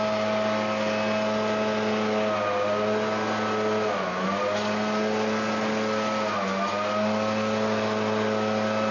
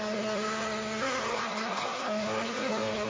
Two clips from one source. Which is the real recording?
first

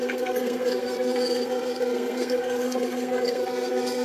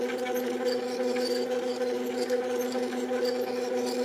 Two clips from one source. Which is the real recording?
second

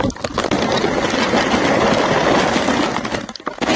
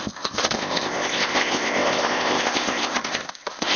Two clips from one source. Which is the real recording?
first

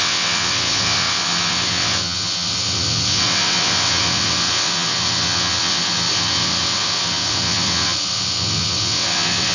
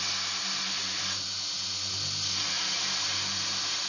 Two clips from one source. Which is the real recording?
second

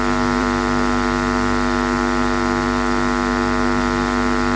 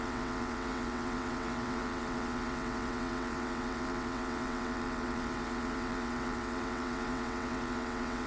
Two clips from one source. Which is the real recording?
first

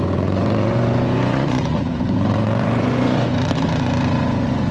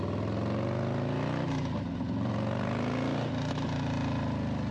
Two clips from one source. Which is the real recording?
second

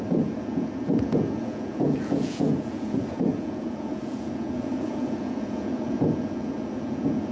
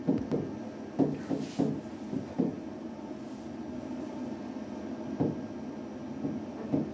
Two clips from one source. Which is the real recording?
second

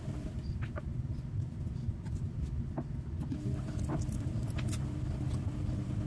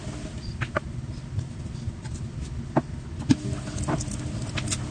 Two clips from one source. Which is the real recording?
second